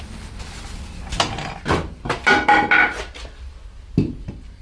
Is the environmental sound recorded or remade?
recorded